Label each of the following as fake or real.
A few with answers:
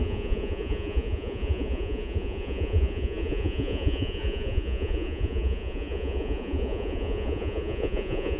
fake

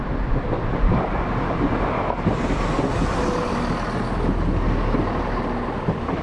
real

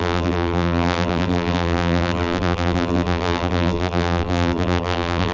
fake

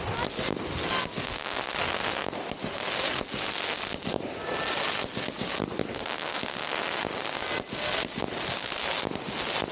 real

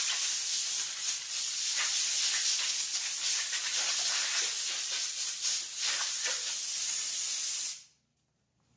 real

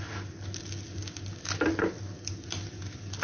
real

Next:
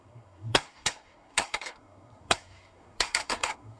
fake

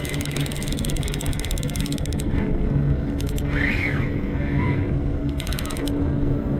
fake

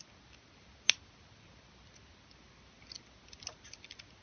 real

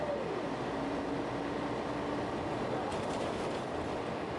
real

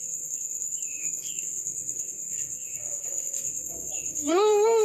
fake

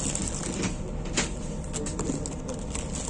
real